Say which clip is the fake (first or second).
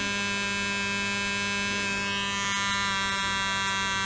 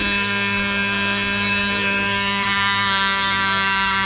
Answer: second